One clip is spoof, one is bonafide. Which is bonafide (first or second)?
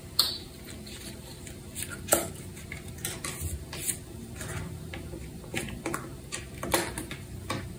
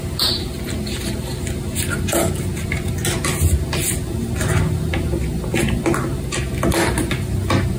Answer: second